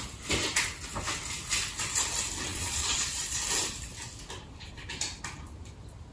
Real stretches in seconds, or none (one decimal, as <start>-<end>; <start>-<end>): 0.0-2.5; 3.4-6.1